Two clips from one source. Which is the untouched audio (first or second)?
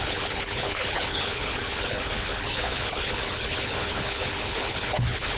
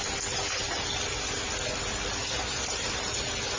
second